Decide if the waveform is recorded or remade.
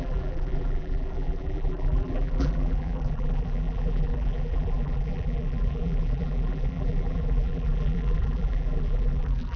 remade